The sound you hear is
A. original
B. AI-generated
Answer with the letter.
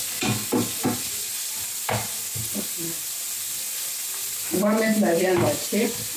A